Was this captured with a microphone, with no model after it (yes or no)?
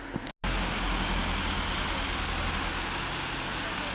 yes